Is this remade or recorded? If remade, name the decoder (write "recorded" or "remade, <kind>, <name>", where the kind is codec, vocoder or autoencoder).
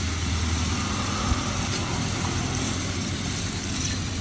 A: recorded